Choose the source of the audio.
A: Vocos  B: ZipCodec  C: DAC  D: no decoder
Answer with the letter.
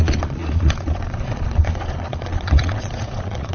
A